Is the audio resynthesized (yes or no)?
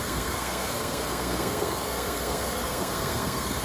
yes